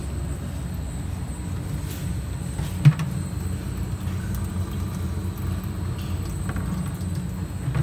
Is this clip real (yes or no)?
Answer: yes